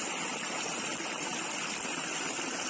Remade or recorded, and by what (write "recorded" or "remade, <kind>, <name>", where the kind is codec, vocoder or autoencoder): recorded